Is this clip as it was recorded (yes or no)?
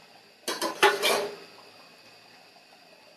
yes